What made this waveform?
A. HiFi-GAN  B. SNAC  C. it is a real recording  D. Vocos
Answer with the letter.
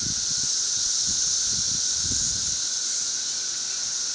D